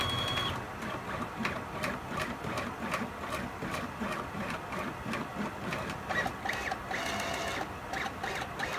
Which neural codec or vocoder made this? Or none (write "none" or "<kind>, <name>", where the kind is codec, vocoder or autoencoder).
none